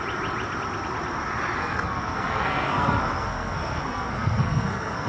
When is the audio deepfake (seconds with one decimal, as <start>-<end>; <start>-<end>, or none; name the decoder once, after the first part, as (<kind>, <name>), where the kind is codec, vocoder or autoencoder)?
1.6-5.1 (codec, SNAC)